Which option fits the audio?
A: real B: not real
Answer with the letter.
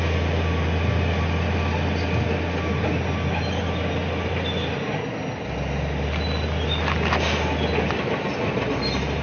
A